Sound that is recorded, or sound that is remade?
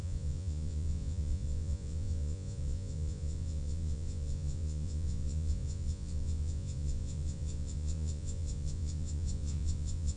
remade